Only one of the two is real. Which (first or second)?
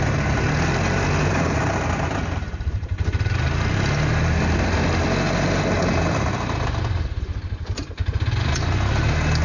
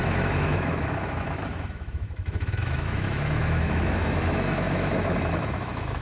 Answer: first